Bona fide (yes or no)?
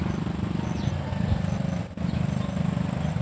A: yes